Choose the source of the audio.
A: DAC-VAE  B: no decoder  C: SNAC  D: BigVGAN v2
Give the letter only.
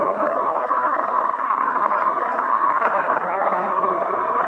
C